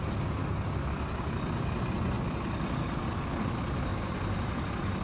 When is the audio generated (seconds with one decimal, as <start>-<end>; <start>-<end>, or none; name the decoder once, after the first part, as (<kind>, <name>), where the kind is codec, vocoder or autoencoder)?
none